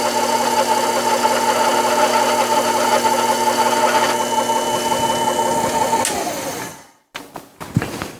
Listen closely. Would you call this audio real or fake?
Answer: real